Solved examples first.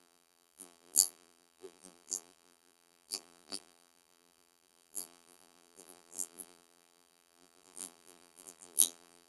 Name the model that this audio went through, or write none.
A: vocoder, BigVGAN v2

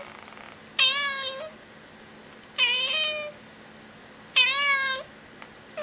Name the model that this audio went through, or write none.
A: none